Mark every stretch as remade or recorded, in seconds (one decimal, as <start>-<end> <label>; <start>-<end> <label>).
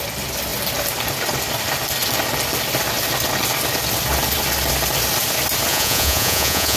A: 0.0-5.7 recorded; 5.7-6.8 remade